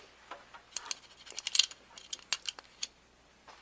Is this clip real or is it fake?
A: real